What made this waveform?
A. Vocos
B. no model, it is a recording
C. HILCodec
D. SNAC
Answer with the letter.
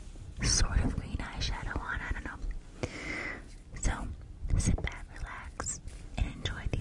B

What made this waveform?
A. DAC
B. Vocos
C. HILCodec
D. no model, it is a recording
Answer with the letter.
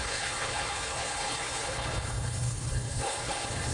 C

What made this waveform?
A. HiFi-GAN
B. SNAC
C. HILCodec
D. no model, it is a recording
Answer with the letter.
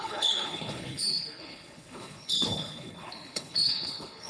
C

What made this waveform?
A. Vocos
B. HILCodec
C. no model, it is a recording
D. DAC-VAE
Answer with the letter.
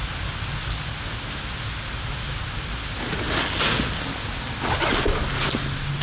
C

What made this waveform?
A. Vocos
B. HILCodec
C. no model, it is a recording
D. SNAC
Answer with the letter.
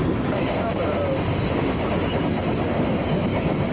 C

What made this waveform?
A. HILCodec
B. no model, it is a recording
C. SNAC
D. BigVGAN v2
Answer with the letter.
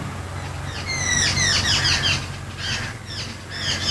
B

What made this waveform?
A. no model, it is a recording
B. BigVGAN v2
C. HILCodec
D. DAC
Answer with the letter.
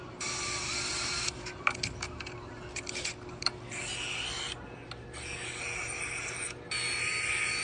A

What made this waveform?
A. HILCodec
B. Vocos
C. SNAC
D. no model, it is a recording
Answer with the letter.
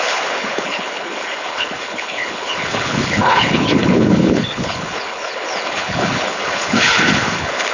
A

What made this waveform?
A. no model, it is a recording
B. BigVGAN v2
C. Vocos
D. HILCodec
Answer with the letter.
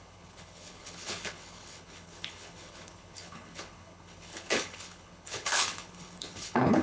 D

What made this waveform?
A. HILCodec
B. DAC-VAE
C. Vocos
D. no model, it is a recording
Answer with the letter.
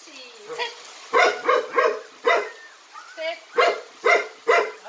D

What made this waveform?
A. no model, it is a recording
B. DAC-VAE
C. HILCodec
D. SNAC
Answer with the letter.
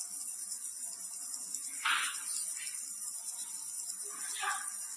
A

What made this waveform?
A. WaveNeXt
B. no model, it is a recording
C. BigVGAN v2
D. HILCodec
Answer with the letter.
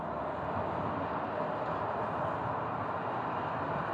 B